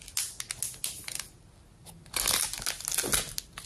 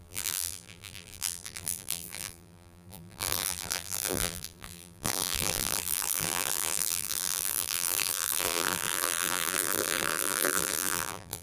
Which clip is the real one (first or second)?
first